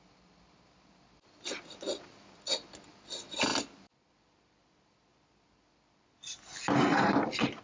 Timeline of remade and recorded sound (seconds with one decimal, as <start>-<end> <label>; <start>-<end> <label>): 0.0-7.6 recorded